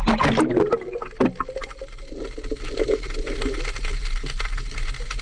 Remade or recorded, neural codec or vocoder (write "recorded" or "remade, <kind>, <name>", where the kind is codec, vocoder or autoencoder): recorded